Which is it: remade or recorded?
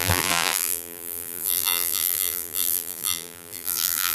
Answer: remade